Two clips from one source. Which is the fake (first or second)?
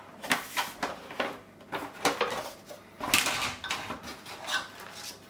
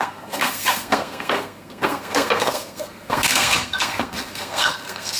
second